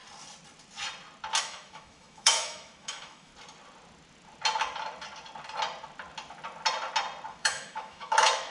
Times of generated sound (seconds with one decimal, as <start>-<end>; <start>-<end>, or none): 1.4-3.3; 7.3-8.5